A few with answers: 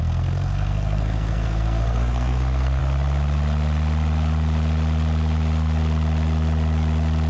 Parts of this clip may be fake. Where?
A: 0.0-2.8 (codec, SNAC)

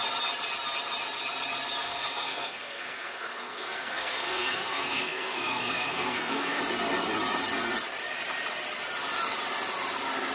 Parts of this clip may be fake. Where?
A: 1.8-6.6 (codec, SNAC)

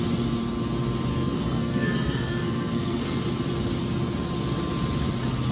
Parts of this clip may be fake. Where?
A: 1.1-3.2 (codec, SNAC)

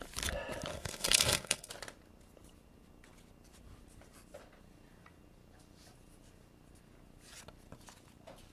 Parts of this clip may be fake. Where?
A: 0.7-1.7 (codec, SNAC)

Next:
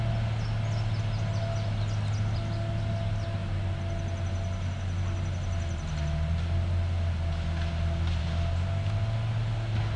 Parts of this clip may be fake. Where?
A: none

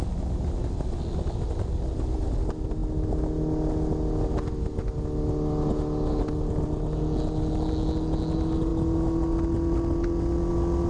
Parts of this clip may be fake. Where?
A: none